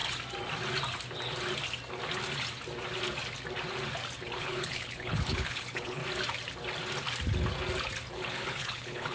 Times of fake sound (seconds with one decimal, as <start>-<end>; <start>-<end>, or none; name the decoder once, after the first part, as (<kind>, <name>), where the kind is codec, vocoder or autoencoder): 4.4-6.0 (codec, HILCodec); 8.1-9.1